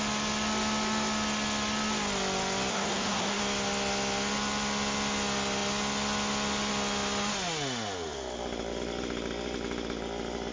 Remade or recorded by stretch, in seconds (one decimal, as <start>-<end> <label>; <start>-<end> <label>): 0.0-2.7 recorded; 2.7-3.4 remade; 3.4-10.5 recorded